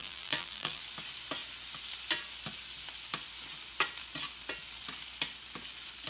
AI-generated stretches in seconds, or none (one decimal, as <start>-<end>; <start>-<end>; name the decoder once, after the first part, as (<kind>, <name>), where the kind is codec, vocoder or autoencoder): 0.0-0.8 (vocoder, BigVGAN v2)